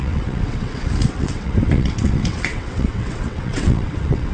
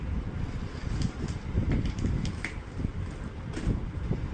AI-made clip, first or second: first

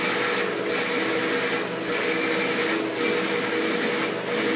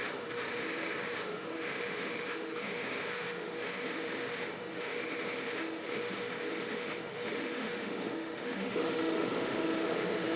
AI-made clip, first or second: second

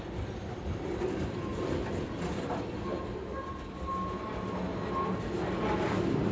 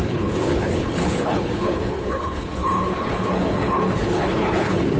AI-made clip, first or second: second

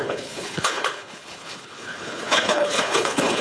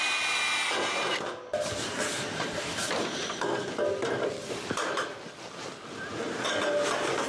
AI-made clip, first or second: first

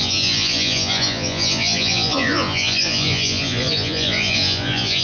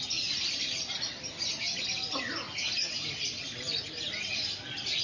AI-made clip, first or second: first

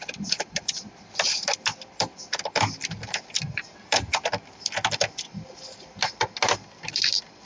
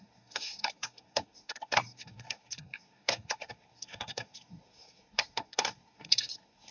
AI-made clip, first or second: second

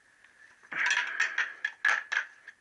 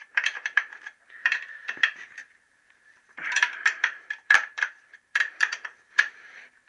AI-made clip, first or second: second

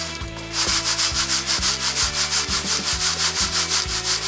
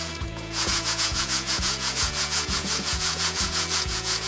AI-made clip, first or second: second